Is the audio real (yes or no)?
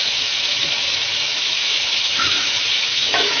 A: no